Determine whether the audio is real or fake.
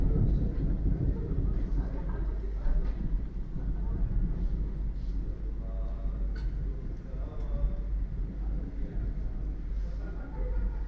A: real